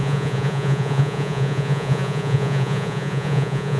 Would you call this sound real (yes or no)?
no